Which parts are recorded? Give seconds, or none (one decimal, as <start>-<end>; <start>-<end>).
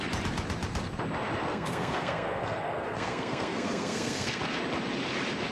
0.0-1.5; 4.4-5.5